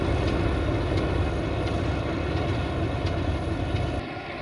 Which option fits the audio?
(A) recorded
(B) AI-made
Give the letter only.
A